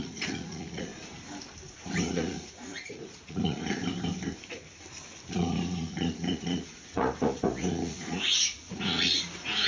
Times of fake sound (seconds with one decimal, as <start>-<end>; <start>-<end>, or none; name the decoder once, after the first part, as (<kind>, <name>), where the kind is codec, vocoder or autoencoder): 0.0-0.9 (vocoder, Vocos); 2.0-3.8; 5.3-9.7